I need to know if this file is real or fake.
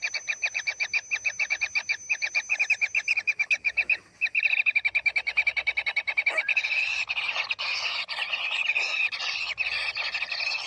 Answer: real